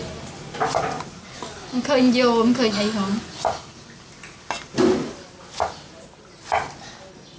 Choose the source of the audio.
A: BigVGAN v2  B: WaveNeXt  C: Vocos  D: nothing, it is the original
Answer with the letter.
D